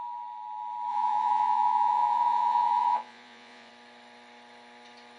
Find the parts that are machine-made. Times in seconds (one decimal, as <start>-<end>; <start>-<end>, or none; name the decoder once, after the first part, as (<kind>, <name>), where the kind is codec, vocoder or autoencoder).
0.9-3.7 (vocoder, Vocos)